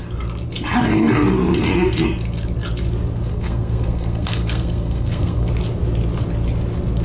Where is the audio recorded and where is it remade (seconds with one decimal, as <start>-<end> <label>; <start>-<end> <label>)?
0.0-3.3 recorded; 3.3-5.5 remade; 5.5-7.0 recorded